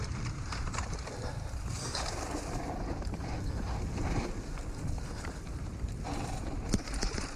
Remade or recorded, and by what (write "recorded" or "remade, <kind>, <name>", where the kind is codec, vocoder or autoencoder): recorded